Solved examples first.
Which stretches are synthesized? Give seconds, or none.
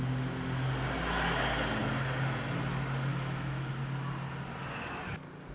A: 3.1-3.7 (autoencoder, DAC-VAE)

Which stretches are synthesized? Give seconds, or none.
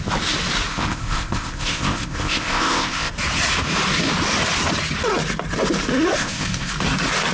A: 0.7-3.1 (codec, ZipCodec); 6.1-6.7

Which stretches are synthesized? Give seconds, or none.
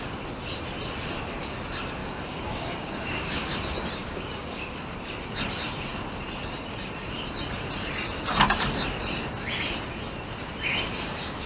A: 2.0-3.6 (codec, DAC); 4.0-4.6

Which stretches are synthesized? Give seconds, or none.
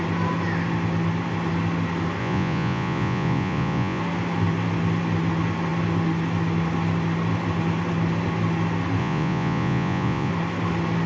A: 2.2-4.0 (vocoder, Vocos); 9.0-10.3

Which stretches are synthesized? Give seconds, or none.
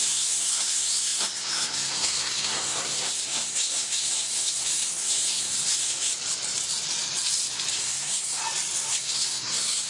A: 0.0-6.1 (codec, SNAC); 7.7-8.4; 8.9-9.9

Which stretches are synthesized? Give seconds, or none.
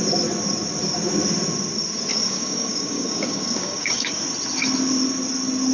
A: 2.1-4.1 (codec, DAC)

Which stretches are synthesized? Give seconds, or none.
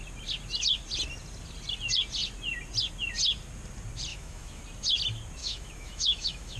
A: 4.1-4.6 (autoencoder, DAC-VAE); 5.4-6.6